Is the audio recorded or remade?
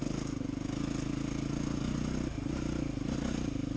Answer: recorded